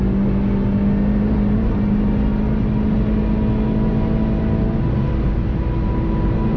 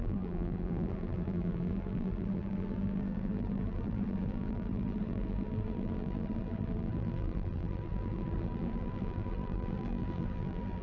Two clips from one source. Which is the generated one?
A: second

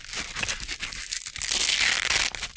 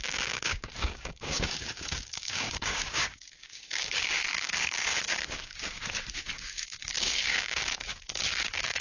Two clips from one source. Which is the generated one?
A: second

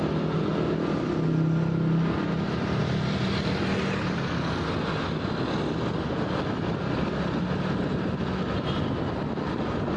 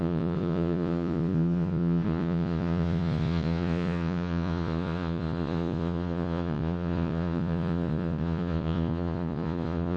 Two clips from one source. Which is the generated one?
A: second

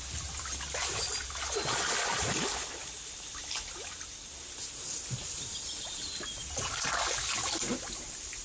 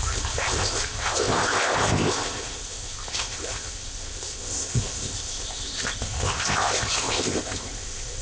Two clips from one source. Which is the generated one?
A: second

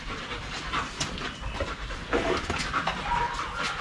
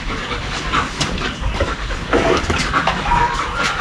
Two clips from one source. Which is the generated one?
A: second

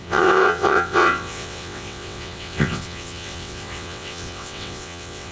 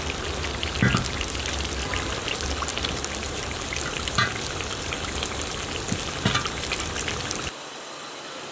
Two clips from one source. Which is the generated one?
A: first